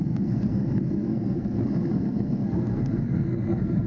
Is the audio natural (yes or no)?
no